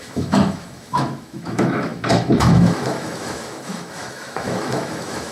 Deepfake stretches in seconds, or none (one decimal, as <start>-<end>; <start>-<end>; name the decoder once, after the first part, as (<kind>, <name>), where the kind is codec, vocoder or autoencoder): 0.0-5.3 (autoencoder, DAC-VAE)